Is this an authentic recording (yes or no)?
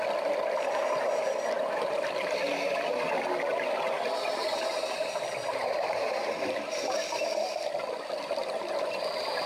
yes